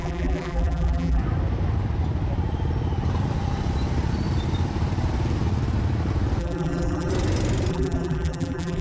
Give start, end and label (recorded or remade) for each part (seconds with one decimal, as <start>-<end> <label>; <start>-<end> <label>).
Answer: 0.0-1.2 remade; 1.2-6.4 recorded; 6.4-7.1 remade; 7.1-7.7 recorded; 7.7-8.8 remade